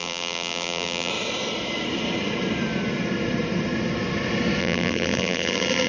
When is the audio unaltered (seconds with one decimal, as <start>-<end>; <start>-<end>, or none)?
1.1-4.6